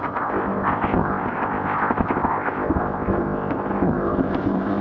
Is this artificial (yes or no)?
yes